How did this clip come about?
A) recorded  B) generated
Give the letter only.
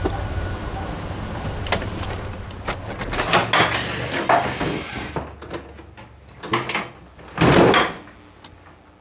A